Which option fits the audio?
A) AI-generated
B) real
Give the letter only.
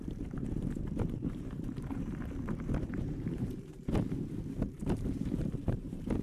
A